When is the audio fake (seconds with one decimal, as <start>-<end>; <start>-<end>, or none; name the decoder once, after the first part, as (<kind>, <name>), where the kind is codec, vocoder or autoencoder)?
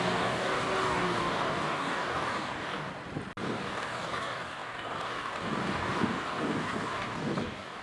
0.0-2.9 (codec, DAC); 3.4-7.8